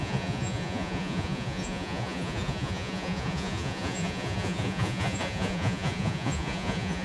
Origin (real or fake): fake